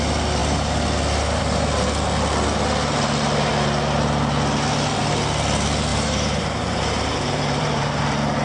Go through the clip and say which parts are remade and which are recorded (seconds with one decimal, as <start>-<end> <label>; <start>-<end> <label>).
0.0-5.9 recorded; 5.9-8.0 remade; 8.0-8.4 recorded